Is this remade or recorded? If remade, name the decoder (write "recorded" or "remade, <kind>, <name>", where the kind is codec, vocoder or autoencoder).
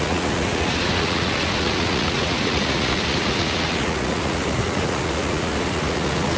remade, vocoder, Vocos